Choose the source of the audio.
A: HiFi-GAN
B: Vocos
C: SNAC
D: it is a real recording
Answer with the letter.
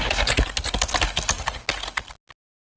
D